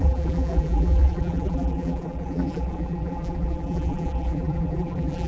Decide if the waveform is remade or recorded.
remade